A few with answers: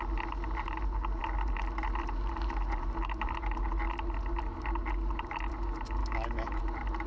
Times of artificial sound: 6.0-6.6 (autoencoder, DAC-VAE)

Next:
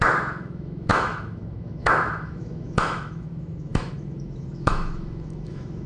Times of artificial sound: 0.0-5.9 (autoencoder, DAC-VAE)

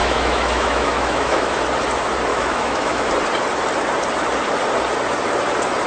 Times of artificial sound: 0.0-1.6 (autoencoder, DAC-VAE); 2.3-3.1

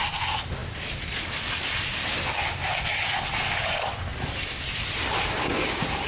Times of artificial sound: none

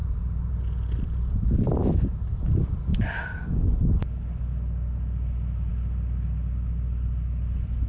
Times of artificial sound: none

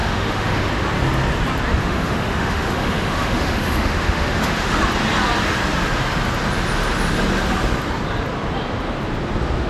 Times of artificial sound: 0.0-0.7 (autoencoder, DAC-VAE); 1.8-4.8

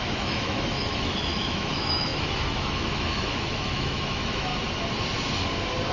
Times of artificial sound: 0.0-4.5 (autoencoder, DAC-VAE)